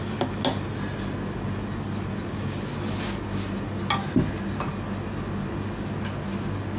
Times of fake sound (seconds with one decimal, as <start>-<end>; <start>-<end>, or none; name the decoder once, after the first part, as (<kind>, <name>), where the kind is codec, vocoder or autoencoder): none